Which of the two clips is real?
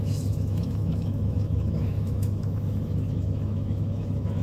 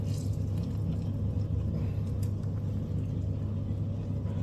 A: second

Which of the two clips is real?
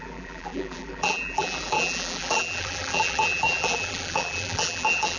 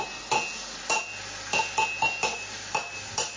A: second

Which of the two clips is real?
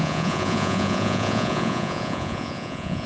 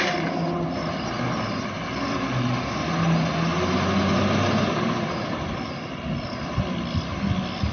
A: second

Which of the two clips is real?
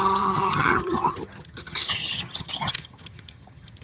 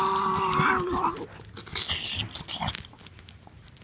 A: second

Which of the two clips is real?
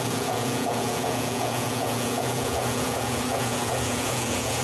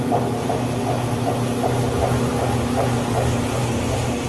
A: second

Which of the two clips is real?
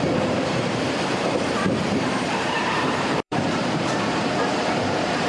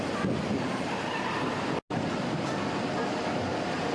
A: second